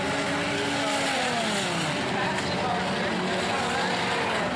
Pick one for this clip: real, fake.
real